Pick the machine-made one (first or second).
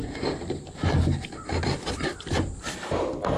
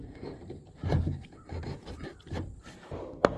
second